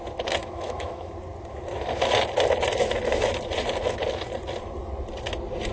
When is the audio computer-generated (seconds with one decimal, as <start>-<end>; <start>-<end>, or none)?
0.4-1.1